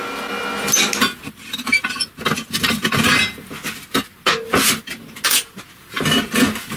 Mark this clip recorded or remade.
recorded